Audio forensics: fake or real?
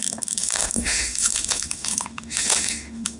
fake